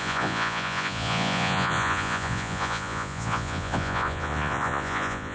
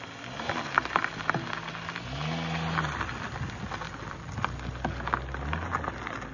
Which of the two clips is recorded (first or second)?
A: second